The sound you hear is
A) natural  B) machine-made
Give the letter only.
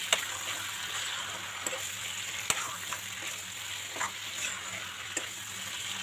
A